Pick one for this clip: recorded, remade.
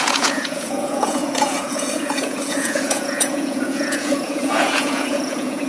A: remade